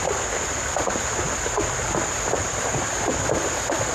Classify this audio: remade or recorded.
recorded